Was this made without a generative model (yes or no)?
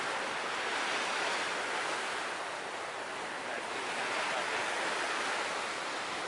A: yes